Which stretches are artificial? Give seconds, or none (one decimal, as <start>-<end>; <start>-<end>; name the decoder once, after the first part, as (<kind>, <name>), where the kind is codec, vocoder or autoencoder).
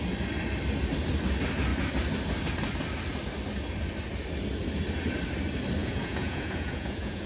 5.8-7.3 (vocoder, Vocos)